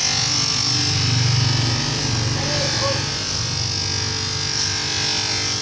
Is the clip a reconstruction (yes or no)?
no